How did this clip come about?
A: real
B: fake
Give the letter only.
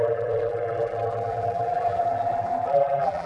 B